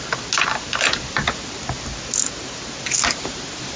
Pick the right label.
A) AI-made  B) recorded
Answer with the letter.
B